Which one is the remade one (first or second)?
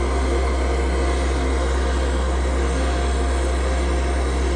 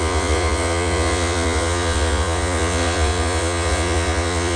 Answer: second